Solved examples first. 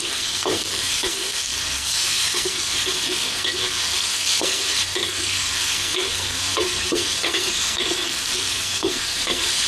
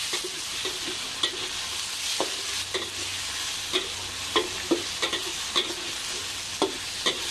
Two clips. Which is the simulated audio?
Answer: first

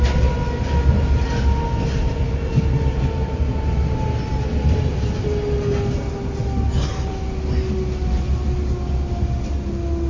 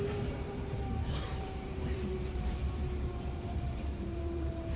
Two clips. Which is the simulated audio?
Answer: second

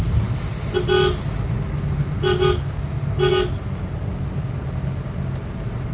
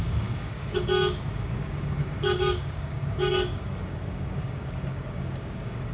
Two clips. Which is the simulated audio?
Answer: second